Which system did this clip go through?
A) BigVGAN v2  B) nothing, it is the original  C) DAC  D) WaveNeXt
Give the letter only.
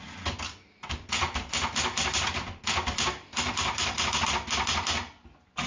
B